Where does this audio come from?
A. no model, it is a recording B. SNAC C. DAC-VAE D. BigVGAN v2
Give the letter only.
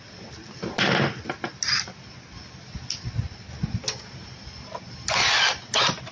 A